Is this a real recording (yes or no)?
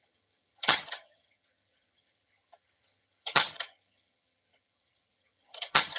no